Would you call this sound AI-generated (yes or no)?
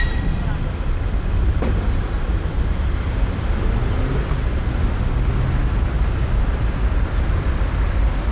no